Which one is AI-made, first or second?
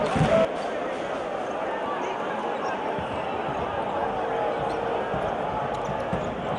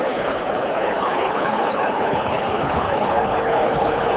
second